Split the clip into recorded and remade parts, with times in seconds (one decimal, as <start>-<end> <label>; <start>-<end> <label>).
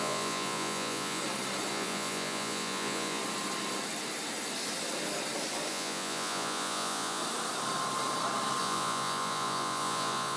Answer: 0.0-1.2 remade; 1.2-1.7 recorded; 1.7-3.2 remade; 3.2-5.7 recorded; 5.7-7.2 remade; 7.2-8.6 recorded; 8.6-10.4 remade